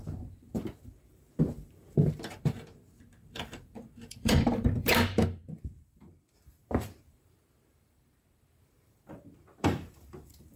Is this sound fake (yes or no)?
yes